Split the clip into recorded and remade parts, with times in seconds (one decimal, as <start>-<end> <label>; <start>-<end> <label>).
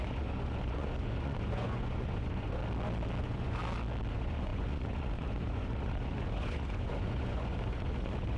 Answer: 0.0-2.6 remade; 2.6-3.2 recorded; 3.2-3.6 remade; 3.6-4.1 recorded; 4.1-8.4 remade